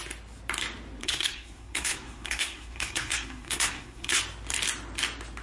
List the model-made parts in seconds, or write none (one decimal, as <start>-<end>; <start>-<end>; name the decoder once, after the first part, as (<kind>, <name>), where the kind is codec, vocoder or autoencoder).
1.0-4.2 (codec, SNAC)